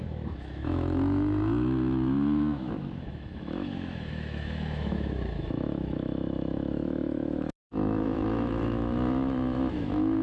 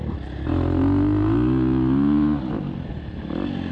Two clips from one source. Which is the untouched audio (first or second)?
second